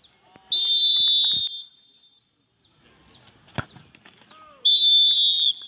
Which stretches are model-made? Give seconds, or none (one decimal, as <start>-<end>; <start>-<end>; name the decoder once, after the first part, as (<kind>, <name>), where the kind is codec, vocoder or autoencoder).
none